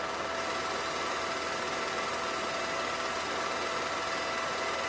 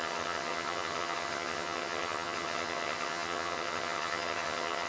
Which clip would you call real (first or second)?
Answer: first